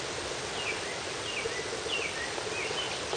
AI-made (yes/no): no